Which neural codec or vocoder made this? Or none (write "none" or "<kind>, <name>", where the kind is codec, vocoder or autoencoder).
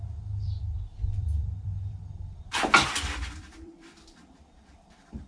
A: vocoder, BigVGAN v2